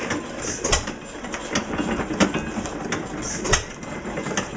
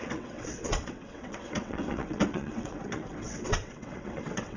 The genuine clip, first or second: first